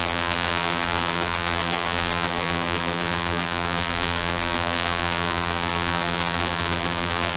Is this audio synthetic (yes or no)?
yes